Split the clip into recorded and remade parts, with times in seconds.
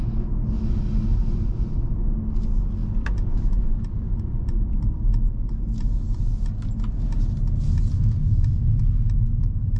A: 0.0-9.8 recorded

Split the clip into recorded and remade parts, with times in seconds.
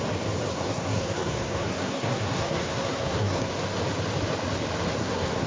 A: 0.0-0.5 recorded; 0.5-3.5 remade; 3.5-5.0 recorded; 5.0-5.5 remade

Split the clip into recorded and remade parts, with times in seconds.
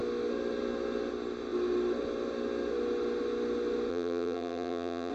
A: 0.0-3.9 recorded; 3.9-5.1 remade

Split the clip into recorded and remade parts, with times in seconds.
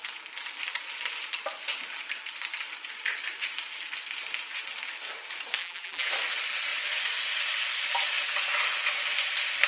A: 0.0-5.6 recorded; 5.6-6.1 remade; 6.1-9.7 recorded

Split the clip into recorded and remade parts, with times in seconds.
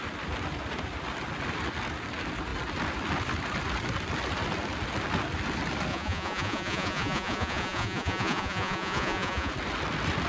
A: 0.0-5.9 recorded; 5.9-9.5 remade; 9.5-10.3 recorded